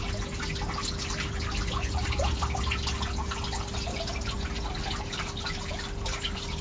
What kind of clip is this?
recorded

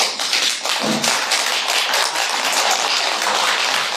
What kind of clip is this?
recorded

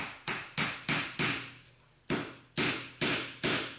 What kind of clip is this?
recorded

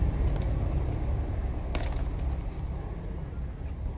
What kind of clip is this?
recorded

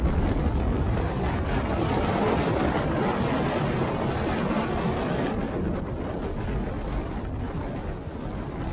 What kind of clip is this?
recorded